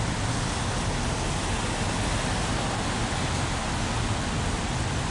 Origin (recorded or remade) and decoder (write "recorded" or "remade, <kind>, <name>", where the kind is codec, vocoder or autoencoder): recorded